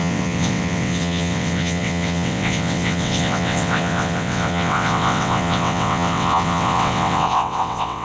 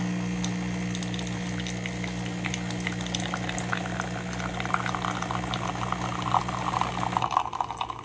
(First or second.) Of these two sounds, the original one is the second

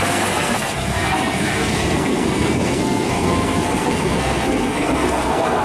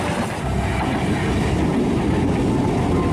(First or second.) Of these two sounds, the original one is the second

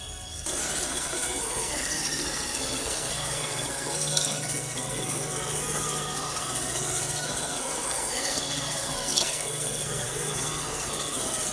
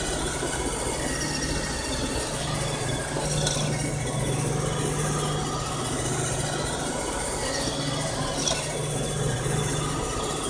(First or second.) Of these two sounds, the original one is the second